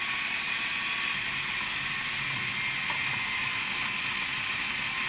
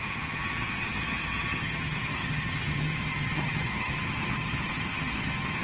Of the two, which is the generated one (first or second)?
second